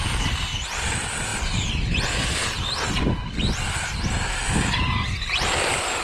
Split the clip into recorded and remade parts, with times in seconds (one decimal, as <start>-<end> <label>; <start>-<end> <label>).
0.0-6.0 recorded